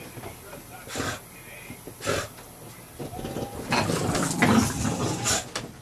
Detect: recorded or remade recorded